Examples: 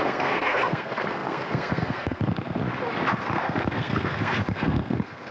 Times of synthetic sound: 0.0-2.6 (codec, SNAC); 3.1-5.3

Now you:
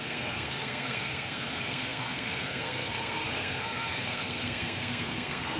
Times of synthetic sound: 0.0-5.6 (codec, SNAC)

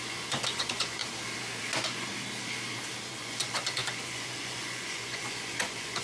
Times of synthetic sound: 0.0-1.0 (vocoder, Vocos); 1.6-2.1; 3.1-6.0

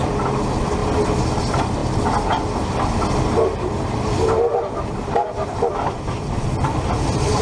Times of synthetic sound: 0.0-0.8 (vocoder, BigVGAN v2); 1.4-1.8; 4.0-7.4

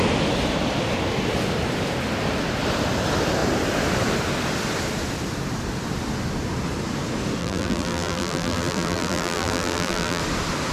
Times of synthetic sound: 7.4-10.2 (vocoder, BigVGAN v2)

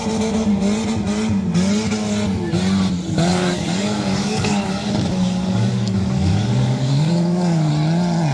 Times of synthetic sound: 3.3-7.7 (codec, DAC)